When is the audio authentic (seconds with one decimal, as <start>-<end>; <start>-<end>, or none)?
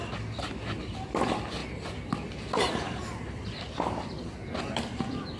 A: 0.0-5.4